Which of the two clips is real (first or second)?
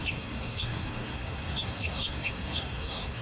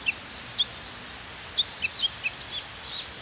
second